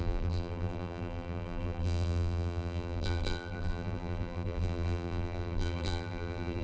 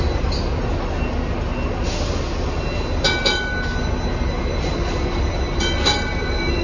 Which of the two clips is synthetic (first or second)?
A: first